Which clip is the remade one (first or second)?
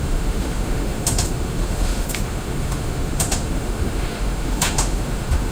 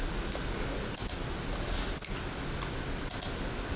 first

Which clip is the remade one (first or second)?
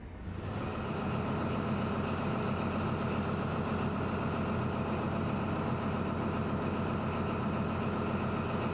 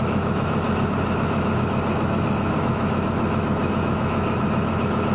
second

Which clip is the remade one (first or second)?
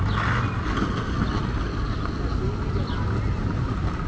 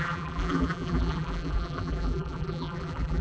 second